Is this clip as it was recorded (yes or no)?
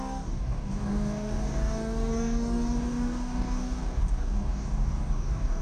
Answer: no